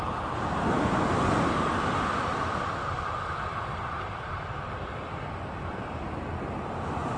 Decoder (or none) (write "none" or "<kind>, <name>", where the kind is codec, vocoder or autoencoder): none